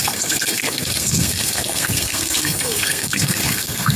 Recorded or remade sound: remade